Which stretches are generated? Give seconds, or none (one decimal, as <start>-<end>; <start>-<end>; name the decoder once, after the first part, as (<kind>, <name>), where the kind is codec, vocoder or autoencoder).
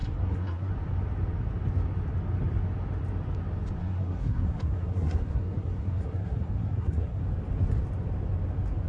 0.0-0.7 (codec, SNAC); 3.8-7.2